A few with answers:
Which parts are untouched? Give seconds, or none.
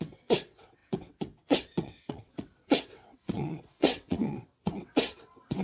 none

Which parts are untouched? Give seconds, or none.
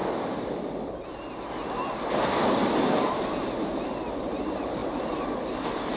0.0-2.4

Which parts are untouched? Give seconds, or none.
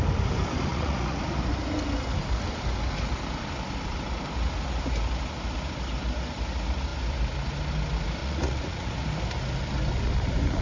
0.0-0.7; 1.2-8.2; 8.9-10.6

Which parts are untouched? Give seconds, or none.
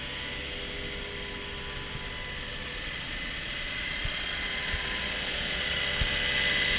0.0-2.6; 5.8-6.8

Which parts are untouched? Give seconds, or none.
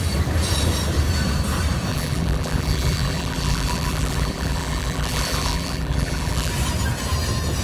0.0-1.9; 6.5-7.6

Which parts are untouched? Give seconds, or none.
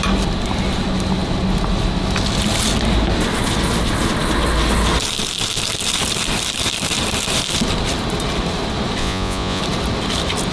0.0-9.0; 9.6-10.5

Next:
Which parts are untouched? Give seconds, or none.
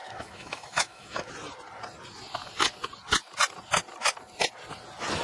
1.3-5.2